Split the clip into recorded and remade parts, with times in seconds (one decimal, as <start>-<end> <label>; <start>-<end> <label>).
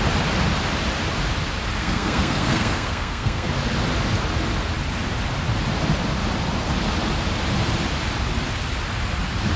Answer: 0.0-1.8 recorded; 1.8-3.5 remade; 3.5-9.6 recorded